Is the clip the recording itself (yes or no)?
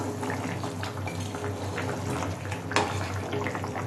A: yes